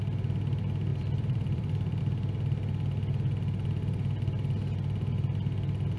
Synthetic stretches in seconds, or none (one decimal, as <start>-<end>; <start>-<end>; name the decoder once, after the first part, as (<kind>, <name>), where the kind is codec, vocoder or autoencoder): 0.9-2.0 (vocoder, BigVGAN v2)